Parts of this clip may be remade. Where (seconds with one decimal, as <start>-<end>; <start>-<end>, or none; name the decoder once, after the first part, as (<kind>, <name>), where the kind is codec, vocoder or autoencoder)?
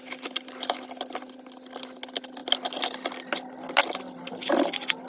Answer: none